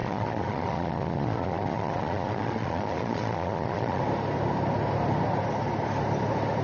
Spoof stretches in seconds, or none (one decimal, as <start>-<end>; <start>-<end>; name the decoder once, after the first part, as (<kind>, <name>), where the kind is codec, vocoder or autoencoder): 0.0-4.0 (vocoder, Vocos)